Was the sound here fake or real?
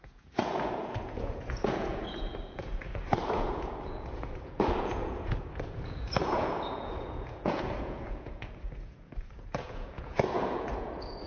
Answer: fake